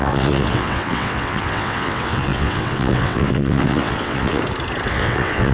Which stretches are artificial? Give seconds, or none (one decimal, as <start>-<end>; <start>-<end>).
0.0-4.4; 4.9-5.5